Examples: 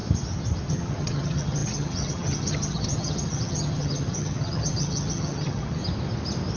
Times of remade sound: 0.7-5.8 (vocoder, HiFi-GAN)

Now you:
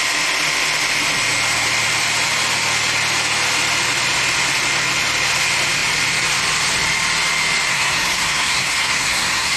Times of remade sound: 7.7-9.6 (codec, SNAC)

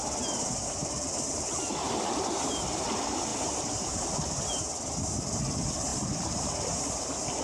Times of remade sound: 3.3-4.1 (vocoder, BigVGAN v2); 5.9-7.4

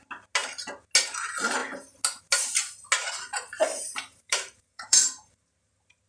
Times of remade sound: 3.7-6.1 (vocoder, BigVGAN v2)

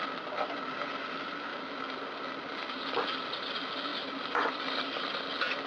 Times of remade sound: none

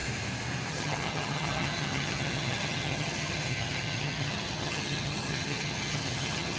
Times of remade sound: 0.7-6.6 (vocoder, HiFi-GAN)